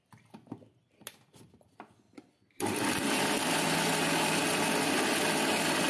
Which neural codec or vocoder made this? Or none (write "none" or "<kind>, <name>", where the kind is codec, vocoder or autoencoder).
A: none